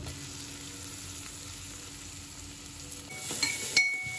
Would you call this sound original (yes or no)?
yes